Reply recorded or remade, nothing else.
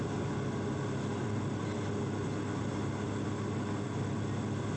recorded